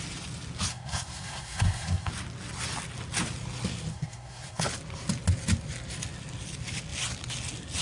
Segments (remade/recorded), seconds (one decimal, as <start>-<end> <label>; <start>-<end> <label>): 0.0-0.7 recorded; 0.7-2.1 remade; 2.1-3.9 recorded; 3.9-4.6 remade; 4.6-7.8 recorded

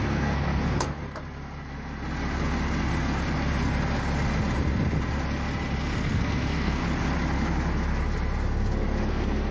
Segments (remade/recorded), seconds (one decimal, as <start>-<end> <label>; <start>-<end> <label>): 0.0-1.0 remade; 1.0-5.8 recorded; 5.8-6.8 remade; 6.8-9.1 recorded; 9.1-9.5 remade

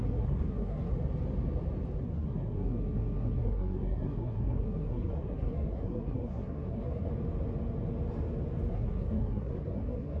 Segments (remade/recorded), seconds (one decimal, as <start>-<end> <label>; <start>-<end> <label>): 0.0-0.9 remade; 0.9-2.0 recorded; 2.0-7.1 remade; 7.1-8.7 recorded; 8.7-10.2 remade

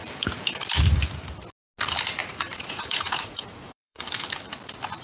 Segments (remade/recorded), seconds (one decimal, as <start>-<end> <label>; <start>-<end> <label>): 0.0-2.2 recorded; 2.2-4.2 remade; 4.2-5.0 recorded